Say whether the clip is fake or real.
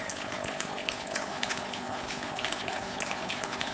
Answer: fake